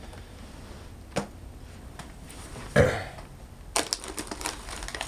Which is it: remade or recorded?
recorded